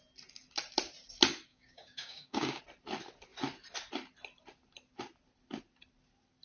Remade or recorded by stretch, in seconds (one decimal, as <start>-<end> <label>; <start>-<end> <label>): 0.0-1.5 recorded; 1.5-2.6 remade; 2.6-6.4 recorded